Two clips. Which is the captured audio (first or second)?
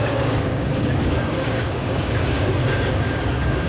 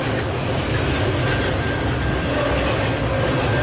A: second